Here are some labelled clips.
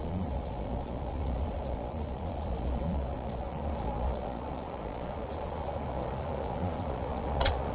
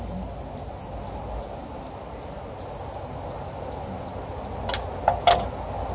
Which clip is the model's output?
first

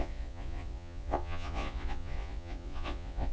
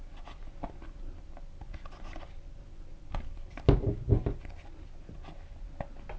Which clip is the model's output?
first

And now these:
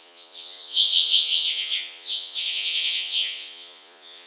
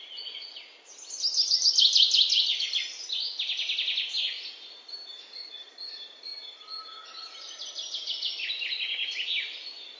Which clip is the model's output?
first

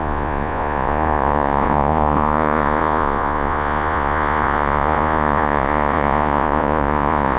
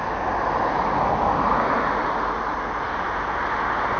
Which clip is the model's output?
first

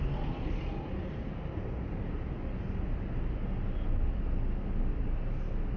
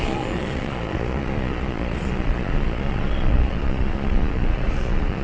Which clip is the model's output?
second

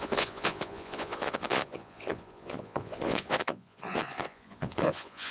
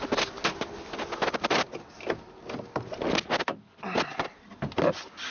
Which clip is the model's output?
first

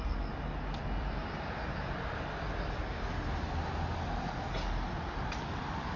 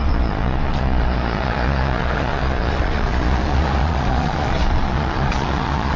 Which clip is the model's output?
second